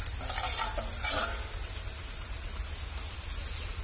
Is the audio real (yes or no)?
yes